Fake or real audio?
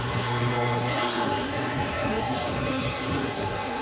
fake